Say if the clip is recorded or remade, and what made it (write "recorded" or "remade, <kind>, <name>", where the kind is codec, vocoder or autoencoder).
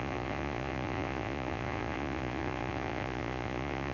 remade, vocoder, Vocos